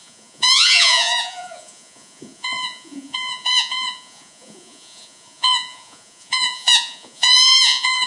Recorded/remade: remade